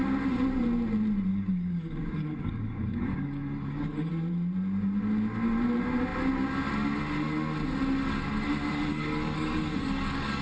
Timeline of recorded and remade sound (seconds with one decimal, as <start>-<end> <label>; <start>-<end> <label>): 0.0-1.3 recorded; 1.3-4.1 remade; 4.1-8.9 recorded; 8.9-10.4 remade